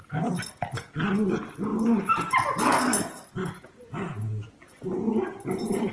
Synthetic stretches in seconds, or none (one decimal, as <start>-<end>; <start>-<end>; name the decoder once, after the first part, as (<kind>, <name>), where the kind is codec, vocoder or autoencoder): none